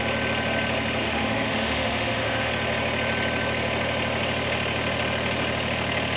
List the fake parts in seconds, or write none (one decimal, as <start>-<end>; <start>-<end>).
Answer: 1.0-2.5